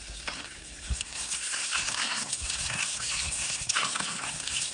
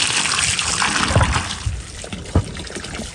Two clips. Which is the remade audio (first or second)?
first